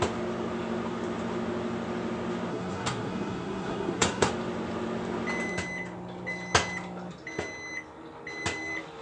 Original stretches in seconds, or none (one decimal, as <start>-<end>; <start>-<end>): 0.0-2.5; 4.3-9.0